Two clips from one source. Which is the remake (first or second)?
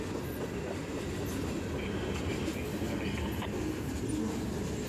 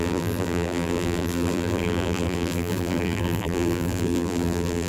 second